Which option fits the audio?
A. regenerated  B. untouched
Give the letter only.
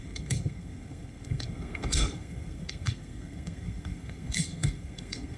A